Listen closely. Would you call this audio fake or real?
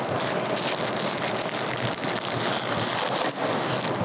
real